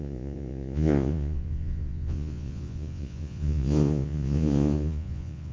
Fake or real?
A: fake